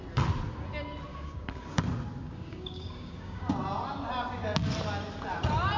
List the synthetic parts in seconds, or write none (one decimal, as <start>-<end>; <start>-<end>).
1.1-1.8; 2.2-3.5